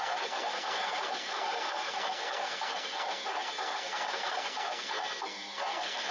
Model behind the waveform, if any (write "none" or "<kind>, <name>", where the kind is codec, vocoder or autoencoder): codec, SNAC